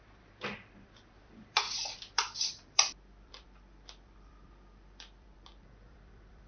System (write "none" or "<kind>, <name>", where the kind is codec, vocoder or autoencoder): vocoder, BigVGAN v2